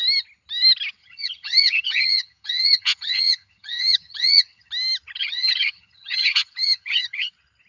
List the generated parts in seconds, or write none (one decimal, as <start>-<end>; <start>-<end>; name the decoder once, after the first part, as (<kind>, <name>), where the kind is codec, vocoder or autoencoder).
1.0-4.7 (vocoder, HiFi-GAN); 5.2-7.3